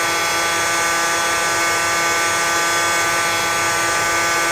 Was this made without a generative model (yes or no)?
yes